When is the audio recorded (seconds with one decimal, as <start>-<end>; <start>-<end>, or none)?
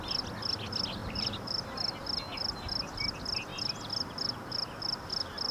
0.0-1.0; 1.6-5.5